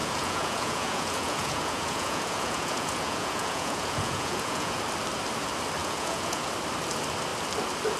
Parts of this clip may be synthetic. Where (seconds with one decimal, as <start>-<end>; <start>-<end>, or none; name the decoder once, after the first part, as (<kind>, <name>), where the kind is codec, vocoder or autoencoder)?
0.0-4.8 (vocoder, Vocos); 5.8-6.5